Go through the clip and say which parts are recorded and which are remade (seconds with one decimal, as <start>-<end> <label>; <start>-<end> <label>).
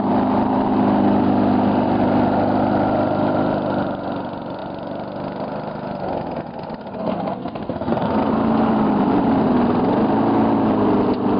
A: 0.0-6.9 recorded; 6.9-8.3 remade; 8.3-11.4 recorded